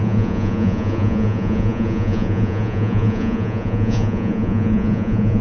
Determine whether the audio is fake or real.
fake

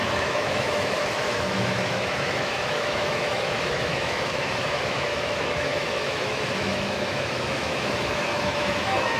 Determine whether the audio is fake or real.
fake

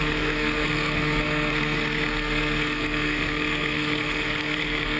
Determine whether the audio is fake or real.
fake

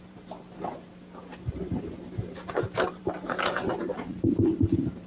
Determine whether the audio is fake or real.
fake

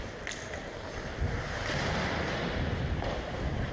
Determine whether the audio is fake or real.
real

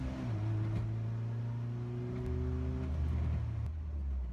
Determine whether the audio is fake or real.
real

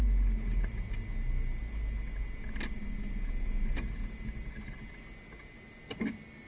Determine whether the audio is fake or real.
real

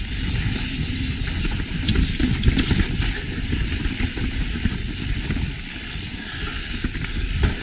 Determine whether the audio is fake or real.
real